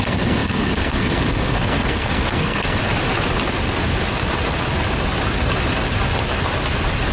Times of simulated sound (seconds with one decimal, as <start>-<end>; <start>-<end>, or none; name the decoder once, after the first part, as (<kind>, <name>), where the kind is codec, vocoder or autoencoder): 0.0-2.8 (codec, SNAC)

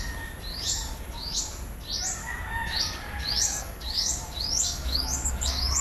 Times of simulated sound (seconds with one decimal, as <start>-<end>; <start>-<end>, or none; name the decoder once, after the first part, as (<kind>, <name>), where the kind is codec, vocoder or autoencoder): 0.5-1.4 (codec, DAC); 2.2-5.8